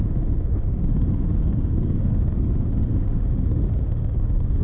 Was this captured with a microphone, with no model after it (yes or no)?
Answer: no